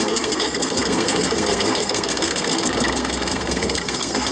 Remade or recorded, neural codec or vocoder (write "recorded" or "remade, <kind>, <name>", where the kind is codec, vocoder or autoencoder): remade, codec, SNAC